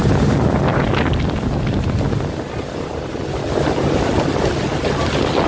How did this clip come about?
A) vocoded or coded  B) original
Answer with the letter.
B